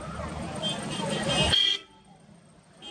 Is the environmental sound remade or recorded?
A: recorded